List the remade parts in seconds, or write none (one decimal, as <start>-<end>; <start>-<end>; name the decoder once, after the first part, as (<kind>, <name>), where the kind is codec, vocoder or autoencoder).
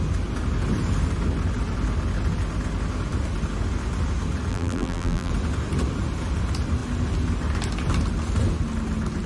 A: 4.5-5.3 (vocoder, BigVGAN v2)